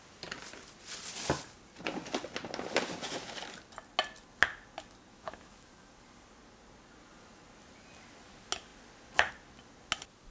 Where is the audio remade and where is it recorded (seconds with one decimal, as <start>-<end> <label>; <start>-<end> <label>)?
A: 0.0-5.1 recorded; 5.1-5.7 remade; 5.7-10.3 recorded